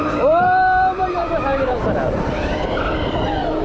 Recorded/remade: remade